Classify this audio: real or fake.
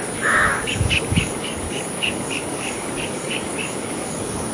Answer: fake